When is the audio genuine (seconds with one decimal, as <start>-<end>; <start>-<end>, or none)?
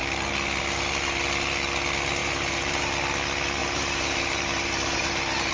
0.0-2.2; 2.9-3.6